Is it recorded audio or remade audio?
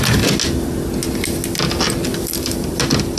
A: recorded